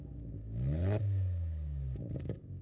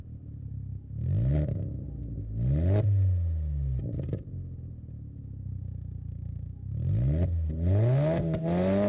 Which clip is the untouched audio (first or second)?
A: second